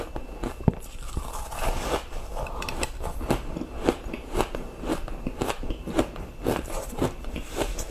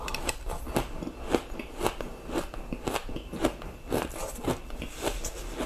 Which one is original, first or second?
second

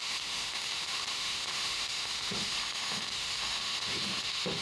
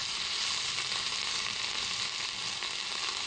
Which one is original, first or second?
second